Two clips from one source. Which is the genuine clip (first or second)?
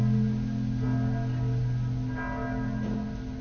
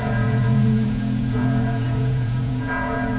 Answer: first